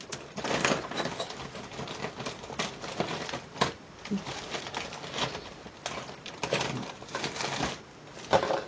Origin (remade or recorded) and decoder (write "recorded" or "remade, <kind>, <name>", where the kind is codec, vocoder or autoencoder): recorded